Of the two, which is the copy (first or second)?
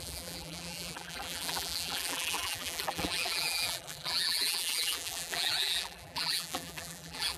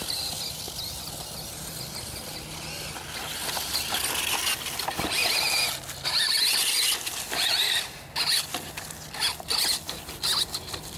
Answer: first